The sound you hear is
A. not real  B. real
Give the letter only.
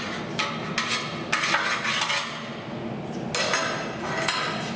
B